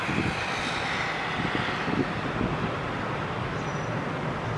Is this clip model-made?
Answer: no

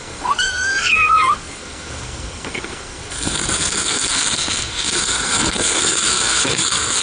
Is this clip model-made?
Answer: yes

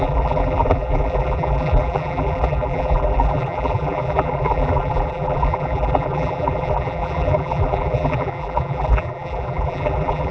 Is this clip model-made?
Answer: yes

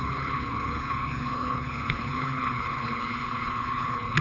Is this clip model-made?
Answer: yes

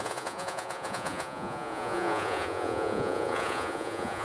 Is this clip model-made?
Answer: yes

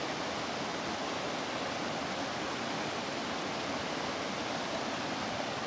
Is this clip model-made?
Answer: no